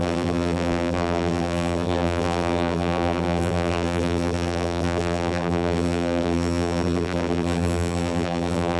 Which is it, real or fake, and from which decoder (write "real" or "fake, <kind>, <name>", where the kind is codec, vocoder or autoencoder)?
fake, vocoder, BigVGAN v2